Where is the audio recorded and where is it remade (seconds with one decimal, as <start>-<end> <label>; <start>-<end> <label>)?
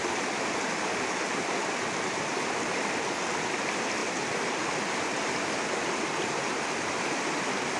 0.0-7.8 recorded